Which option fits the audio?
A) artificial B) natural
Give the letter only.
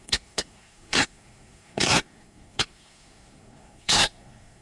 A